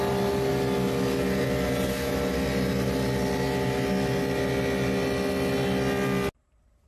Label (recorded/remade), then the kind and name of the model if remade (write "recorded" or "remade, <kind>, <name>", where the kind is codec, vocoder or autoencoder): recorded